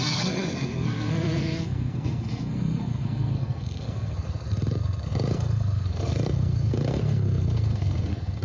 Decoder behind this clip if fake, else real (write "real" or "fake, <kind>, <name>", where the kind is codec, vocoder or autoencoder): fake, codec, SNAC